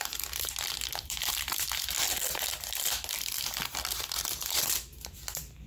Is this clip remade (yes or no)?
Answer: yes